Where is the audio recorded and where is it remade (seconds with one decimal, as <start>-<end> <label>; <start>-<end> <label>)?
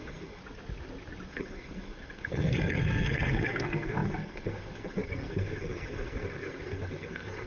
0.0-0.4 remade; 0.4-1.3 recorded; 1.3-7.5 remade